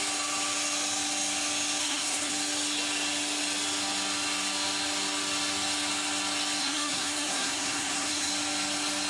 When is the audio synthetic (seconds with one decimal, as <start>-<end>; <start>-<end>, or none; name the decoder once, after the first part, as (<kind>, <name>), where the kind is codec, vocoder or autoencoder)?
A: 1.8-2.3 (codec, SNAC); 6.6-8.3